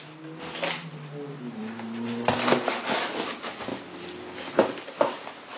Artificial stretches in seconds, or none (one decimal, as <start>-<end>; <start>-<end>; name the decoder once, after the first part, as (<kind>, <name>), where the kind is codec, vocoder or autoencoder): none